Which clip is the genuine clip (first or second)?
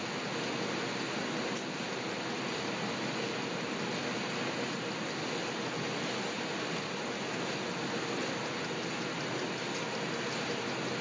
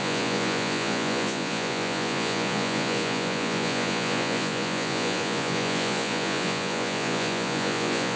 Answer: first